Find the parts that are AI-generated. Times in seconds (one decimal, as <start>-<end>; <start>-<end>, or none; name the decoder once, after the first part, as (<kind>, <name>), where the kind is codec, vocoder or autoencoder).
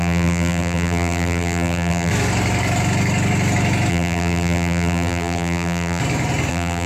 0.0-2.1 (vocoder, BigVGAN v2); 3.9-6.0; 6.5-6.9